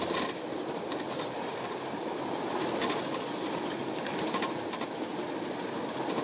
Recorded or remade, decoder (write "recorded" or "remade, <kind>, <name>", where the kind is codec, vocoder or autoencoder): recorded